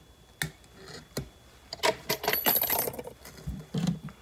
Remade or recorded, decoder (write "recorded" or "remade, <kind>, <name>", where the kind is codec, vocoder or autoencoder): recorded